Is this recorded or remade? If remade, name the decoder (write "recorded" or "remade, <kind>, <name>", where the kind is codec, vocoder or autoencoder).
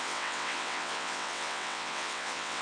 remade, vocoder, WaveNeXt